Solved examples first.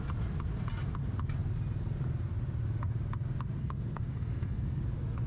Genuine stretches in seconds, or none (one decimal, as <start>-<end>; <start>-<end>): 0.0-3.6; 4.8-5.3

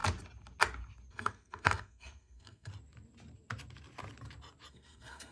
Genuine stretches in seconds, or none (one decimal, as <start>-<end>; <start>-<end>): 0.0-1.1; 2.7-4.7

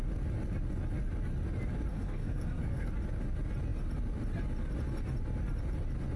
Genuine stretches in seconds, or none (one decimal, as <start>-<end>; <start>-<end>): 0.0-1.9; 2.9-6.2

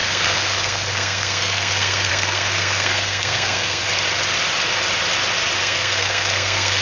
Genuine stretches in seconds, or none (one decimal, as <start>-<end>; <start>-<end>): 3.8-5.6

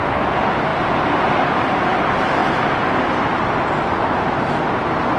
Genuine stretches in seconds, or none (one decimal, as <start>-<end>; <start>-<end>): 0.0-5.2